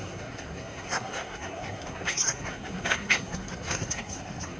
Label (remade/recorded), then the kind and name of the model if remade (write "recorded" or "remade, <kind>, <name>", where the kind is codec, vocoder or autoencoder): remade, codec, SNAC